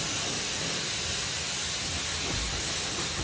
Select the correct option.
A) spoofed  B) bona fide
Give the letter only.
B